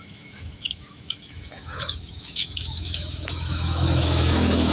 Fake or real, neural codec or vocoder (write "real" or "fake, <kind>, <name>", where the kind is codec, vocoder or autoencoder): fake, autoencoder, DAC-VAE